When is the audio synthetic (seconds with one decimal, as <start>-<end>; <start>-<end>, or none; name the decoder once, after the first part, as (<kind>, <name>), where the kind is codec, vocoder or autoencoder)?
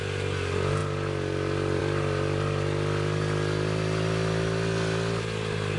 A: none